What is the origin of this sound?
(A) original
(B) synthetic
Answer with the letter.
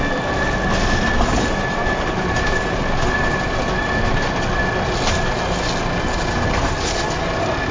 A